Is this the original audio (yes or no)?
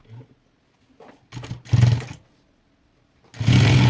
yes